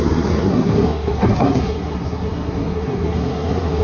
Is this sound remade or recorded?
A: remade